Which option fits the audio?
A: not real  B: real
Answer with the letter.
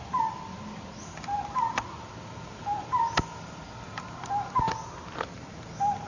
B